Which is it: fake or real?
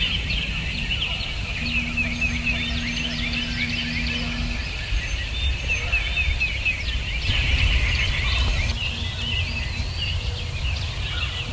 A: real